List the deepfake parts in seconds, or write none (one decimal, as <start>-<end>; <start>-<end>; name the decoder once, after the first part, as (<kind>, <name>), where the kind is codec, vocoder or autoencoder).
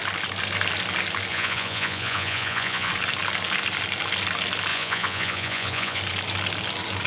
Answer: 1.3-2.9 (vocoder, Vocos); 4.7-6.0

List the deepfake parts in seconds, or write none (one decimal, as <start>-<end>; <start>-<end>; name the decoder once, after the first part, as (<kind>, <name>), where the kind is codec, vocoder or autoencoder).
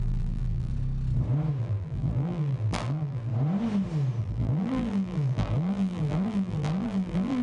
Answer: 0.0-0.7 (vocoder, BigVGAN v2); 1.6-3.3; 4.2-7.4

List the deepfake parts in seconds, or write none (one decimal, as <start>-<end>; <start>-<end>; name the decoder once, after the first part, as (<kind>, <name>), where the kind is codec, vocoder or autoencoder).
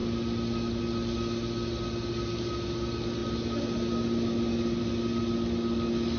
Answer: none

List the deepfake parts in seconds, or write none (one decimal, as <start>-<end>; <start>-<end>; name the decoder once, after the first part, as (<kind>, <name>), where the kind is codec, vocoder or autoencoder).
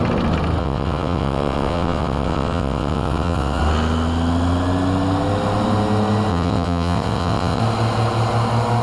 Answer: 0.6-3.6 (vocoder, WaveNeXt); 6.3-7.6